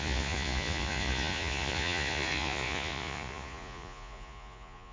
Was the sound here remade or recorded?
remade